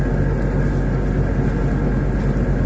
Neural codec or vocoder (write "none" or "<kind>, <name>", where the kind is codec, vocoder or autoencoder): none